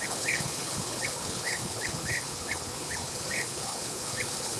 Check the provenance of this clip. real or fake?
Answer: fake